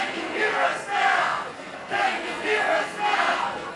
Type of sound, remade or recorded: remade